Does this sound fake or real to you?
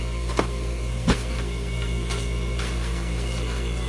fake